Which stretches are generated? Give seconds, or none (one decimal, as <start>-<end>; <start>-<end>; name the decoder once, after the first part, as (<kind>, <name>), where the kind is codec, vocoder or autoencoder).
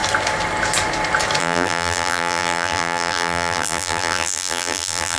1.4-5.2 (vocoder, BigVGAN v2)